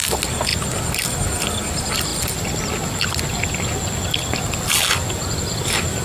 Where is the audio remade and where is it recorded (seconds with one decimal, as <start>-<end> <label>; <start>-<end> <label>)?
0.0-6.0 recorded